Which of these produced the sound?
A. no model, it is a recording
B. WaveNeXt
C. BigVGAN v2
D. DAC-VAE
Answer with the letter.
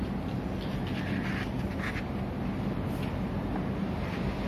A